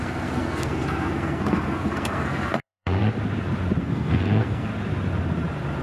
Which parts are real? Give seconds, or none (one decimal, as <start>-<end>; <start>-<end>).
3.0-3.8; 4.7-5.8